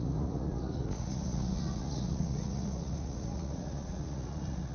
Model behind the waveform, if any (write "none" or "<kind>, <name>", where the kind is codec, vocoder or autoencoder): vocoder, Vocos